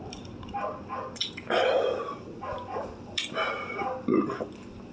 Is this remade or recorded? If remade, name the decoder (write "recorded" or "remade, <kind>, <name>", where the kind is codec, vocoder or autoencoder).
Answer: recorded